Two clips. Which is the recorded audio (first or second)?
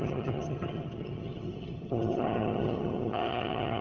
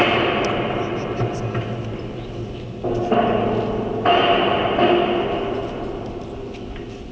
second